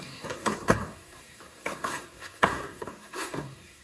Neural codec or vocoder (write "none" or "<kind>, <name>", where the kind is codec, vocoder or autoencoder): codec, SNAC